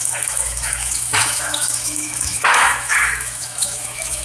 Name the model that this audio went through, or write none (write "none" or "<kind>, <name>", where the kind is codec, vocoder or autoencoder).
autoencoder, DAC-VAE